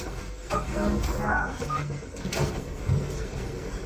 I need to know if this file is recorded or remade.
remade